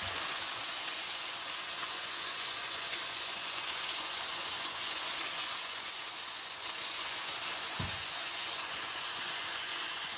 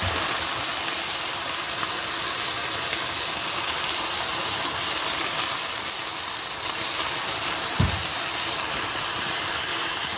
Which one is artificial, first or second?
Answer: first